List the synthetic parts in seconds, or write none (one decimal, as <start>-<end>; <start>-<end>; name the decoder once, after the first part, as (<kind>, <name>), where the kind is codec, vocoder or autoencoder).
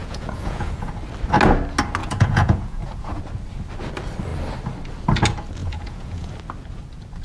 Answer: 0.0-0.9 (vocoder, Vocos); 2.0-3.2; 5.6-6.3